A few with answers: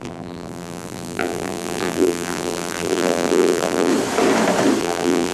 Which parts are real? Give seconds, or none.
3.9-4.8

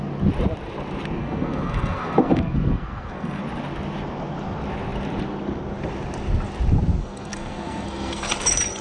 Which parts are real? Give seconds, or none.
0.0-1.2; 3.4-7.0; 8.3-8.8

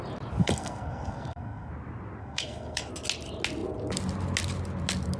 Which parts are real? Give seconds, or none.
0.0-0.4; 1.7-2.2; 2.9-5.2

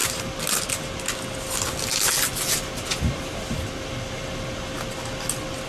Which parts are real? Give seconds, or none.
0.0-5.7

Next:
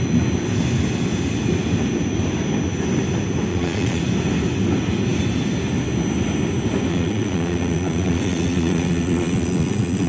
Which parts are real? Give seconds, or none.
0.0-3.5; 4.0-6.9

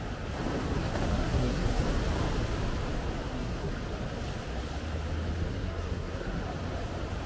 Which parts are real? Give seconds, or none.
0.0-1.1; 1.8-3.2; 3.7-5.5; 6.4-7.3